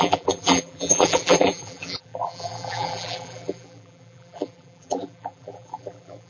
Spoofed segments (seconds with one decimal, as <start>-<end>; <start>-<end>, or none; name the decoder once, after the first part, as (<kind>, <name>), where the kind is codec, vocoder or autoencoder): 0.0-6.3 (vocoder, BigVGAN v2)